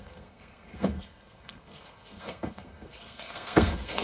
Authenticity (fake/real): fake